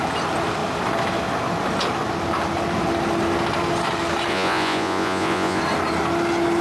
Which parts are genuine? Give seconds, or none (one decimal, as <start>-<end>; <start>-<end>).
0.0-4.3; 5.6-6.6